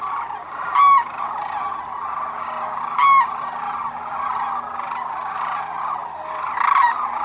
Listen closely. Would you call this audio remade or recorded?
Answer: recorded